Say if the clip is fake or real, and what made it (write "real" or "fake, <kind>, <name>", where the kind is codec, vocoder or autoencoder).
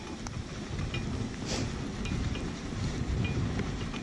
real